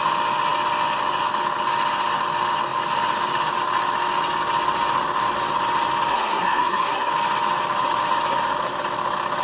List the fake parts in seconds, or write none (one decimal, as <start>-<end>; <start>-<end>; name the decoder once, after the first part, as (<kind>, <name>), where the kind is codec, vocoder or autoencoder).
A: 6.1-7.1 (codec, SNAC)

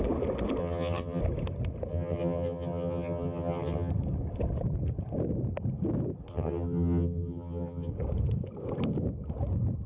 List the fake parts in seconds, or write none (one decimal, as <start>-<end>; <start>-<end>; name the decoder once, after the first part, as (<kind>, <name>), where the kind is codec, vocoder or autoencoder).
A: 0.6-1.2 (vocoder, HiFi-GAN); 1.9-3.9; 6.3-7.9